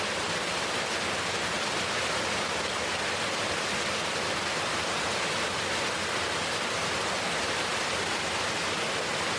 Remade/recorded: recorded